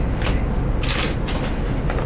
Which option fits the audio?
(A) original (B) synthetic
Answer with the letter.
A